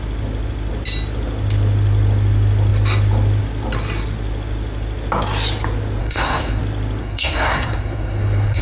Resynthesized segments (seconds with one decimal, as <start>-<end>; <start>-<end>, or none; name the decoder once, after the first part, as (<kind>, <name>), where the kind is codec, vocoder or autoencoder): 6.0-6.6 (codec, SNAC); 7.0-8.6